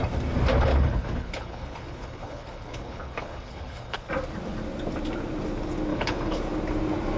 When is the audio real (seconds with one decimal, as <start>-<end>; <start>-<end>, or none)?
0.0-0.7; 4.1-5.9; 6.4-7.2